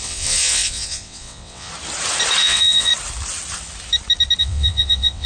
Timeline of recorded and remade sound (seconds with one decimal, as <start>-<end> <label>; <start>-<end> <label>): 0.0-1.7 remade; 1.7-2.4 recorded; 2.4-2.9 remade; 2.9-4.4 recorded; 4.4-5.3 remade